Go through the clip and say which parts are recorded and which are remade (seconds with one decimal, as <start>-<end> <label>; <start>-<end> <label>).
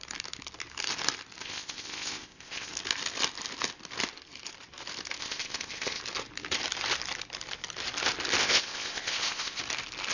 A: 0.0-1.4 recorded; 1.4-2.7 remade; 2.7-5.2 recorded; 5.2-6.0 remade; 6.0-8.4 recorded; 8.4-9.6 remade; 9.6-10.1 recorded